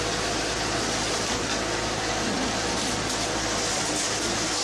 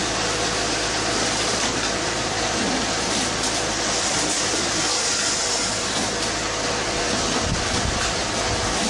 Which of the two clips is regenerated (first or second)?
second